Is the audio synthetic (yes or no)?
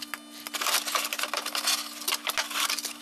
no